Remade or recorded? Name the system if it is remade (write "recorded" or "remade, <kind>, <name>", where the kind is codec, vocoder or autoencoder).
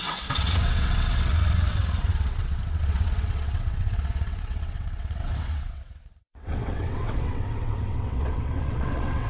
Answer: remade, vocoder, WaveNeXt